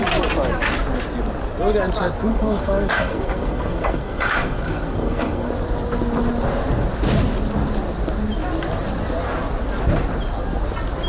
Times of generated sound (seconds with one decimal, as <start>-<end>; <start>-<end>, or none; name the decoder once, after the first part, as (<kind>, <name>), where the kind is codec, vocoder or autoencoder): 2.3-5.5 (codec, SNAC)